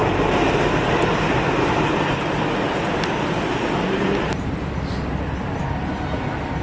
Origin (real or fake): real